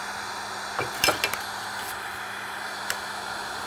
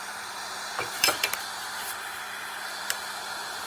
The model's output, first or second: second